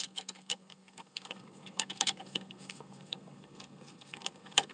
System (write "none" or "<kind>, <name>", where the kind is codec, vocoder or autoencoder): codec, SNAC